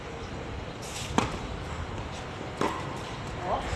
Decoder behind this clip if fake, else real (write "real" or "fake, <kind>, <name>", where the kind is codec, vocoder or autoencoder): real